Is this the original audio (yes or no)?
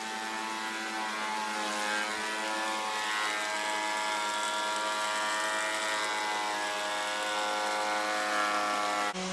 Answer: yes